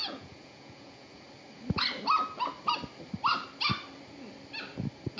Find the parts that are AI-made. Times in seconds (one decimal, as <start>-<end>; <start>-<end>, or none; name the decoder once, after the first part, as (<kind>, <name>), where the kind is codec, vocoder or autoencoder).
0.0-1.3 (vocoder, Vocos)

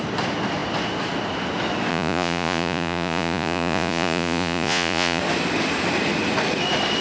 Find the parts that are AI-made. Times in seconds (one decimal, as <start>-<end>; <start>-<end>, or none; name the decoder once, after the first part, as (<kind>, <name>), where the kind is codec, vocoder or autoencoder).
1.9-5.2 (vocoder, Vocos)

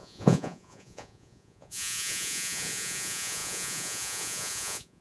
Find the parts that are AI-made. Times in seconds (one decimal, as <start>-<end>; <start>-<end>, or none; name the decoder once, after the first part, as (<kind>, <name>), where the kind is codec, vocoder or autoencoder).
0.0-5.0 (vocoder, Vocos)

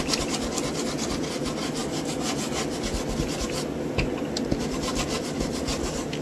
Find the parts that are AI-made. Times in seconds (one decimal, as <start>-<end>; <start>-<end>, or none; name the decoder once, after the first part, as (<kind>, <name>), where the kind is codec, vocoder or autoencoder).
none

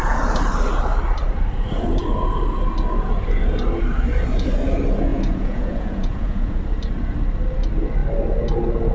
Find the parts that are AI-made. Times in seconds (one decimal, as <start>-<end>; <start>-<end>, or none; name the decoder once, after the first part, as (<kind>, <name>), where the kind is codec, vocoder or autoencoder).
5.1-6.6 (vocoder, Vocos)

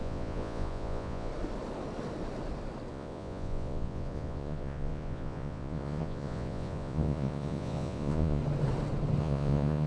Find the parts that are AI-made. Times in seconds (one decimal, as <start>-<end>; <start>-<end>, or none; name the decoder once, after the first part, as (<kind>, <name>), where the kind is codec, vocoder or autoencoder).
0.0-1.3 (vocoder, Vocos); 2.9-8.4; 9.2-9.9